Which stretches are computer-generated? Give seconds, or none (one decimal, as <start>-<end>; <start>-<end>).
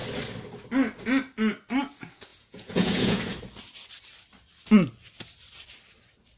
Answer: 2.3-3.2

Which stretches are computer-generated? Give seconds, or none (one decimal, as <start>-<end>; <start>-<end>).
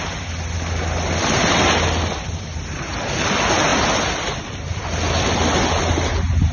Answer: none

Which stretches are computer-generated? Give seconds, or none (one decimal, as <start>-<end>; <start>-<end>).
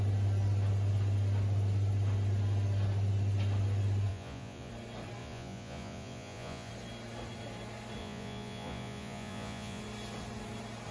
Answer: 4.1-4.7; 5.2-6.7; 8.0-9.8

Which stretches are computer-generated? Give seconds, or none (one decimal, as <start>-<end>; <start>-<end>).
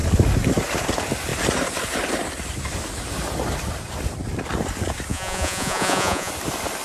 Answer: 5.1-6.3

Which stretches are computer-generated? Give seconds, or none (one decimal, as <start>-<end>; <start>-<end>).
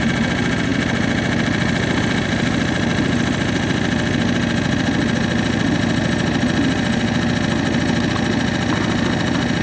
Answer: none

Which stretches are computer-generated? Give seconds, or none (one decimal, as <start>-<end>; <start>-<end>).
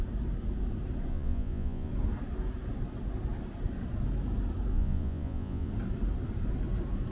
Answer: 1.1-1.9; 4.7-5.7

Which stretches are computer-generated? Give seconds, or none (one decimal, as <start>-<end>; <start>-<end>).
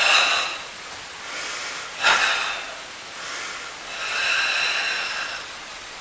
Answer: 0.0-1.1; 4.2-6.0